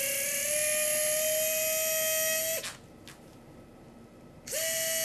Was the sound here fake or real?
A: real